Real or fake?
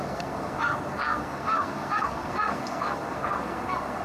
fake